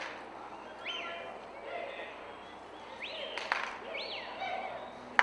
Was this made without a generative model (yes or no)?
yes